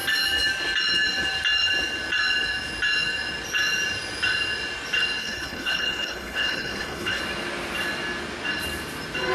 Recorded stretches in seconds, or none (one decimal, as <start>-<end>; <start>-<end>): 0.0-5.2; 7.2-9.3